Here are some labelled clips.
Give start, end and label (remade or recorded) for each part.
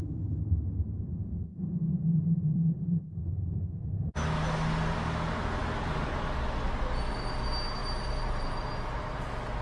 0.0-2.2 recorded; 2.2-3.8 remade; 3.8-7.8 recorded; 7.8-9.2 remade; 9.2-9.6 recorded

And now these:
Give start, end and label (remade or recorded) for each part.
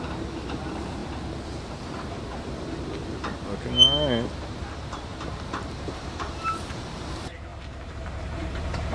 0.0-1.0 remade; 1.0-4.5 recorded; 4.5-8.9 remade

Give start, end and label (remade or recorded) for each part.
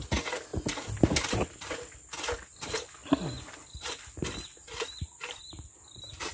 0.0-6.3 recorded